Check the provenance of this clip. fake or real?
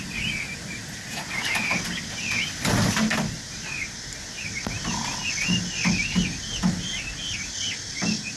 real